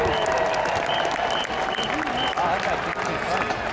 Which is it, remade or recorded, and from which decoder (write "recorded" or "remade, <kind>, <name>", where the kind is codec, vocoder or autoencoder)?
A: recorded